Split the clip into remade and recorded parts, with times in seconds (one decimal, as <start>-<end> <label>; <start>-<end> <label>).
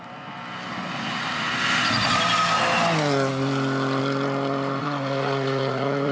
0.0-4.8 recorded; 4.8-6.1 remade